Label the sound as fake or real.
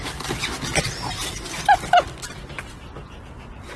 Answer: real